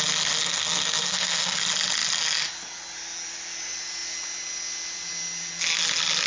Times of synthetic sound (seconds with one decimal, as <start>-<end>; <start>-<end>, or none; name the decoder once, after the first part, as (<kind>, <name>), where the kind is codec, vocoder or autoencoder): 0.4-1.6 (codec, SNAC)